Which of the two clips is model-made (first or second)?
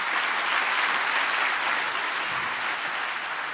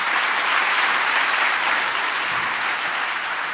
second